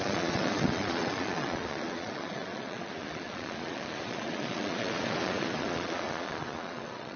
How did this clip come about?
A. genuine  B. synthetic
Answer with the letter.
B